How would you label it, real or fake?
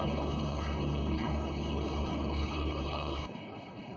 fake